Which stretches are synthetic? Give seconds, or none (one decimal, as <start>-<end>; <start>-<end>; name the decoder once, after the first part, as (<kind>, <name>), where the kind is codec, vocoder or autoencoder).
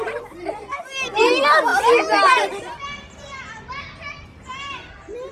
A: none